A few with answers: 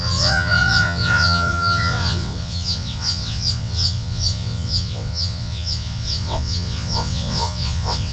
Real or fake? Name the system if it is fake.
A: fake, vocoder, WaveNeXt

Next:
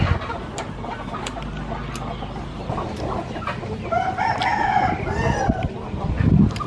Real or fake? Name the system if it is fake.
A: real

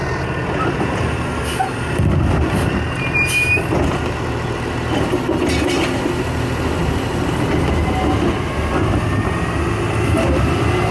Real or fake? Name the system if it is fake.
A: real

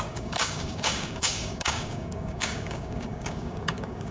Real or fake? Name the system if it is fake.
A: fake, codec, DAC